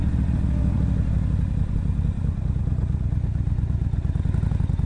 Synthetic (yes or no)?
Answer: no